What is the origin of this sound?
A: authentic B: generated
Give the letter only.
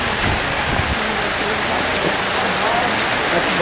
A